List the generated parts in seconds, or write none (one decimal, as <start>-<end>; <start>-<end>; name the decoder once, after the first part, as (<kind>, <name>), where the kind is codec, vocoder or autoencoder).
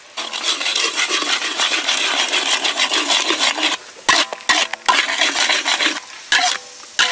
none